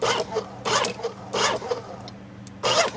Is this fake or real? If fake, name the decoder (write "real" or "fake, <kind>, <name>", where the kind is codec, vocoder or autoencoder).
real